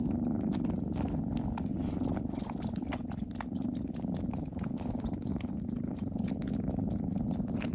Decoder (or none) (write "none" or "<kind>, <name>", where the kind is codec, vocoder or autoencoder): none